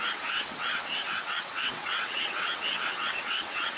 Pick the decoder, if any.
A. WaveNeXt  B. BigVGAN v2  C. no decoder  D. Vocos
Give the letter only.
A